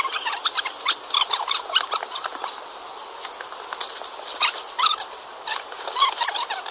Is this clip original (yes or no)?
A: yes